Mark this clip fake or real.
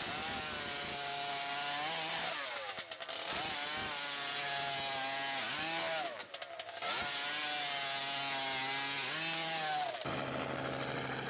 real